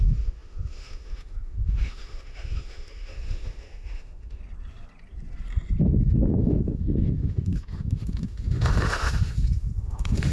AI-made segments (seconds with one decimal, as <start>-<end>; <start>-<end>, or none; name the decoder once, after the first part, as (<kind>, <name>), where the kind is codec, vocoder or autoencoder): 0.0-4.4 (autoencoder, DAC-VAE); 5.8-10.3